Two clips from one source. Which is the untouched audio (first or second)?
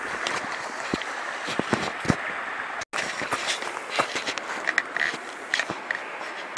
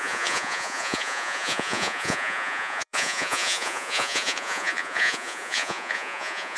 first